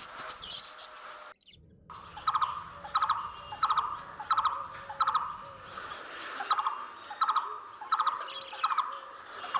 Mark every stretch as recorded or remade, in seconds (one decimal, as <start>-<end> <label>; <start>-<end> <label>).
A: 0.0-9.6 recorded